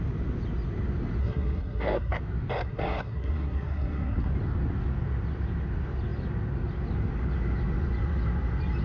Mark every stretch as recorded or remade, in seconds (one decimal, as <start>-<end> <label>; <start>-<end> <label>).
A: 0.0-1.2 recorded; 1.2-2.2 remade; 2.2-2.6 recorded; 2.6-4.3 remade; 4.3-8.8 recorded